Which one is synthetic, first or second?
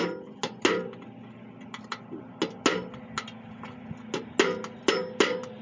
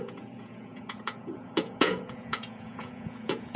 second